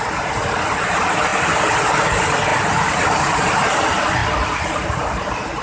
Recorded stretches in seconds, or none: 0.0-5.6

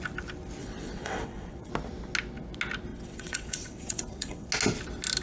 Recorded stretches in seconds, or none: 0.0-0.6; 1.7-2.9; 4.5-5.2

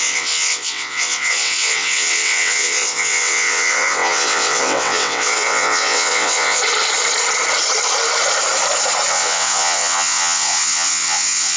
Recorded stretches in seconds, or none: 6.6-9.1